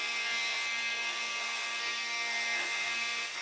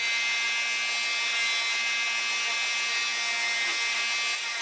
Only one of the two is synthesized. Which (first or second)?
first